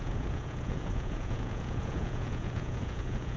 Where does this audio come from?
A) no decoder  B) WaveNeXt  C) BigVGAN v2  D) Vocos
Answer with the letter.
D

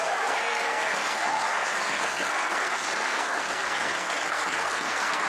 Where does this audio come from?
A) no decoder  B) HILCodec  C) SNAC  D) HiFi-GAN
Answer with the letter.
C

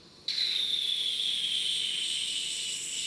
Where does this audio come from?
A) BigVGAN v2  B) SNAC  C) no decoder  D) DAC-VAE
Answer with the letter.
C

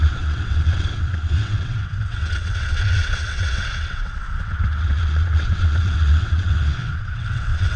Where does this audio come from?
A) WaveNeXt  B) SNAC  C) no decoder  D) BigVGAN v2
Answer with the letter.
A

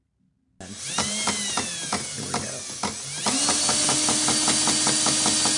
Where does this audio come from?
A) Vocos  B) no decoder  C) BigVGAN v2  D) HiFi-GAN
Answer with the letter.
B